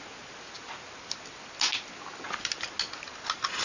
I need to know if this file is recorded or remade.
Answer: recorded